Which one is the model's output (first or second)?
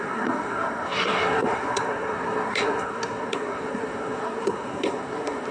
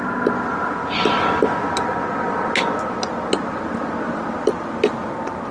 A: first